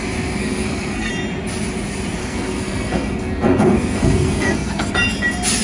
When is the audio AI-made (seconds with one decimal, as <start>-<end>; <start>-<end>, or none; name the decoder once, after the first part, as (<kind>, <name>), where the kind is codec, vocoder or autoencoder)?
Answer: 0.4-1.1 (codec, SNAC); 2.2-4.9